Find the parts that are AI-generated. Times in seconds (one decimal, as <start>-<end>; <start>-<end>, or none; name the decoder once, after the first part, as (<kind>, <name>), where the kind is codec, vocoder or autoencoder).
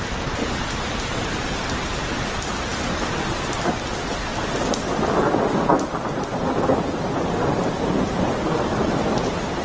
none